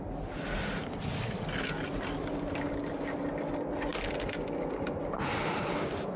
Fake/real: real